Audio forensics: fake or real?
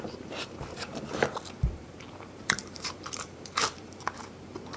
fake